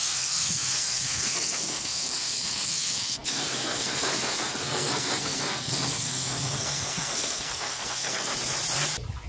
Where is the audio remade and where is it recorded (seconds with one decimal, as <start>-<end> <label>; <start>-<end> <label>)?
0.0-8.3 remade; 8.3-9.3 recorded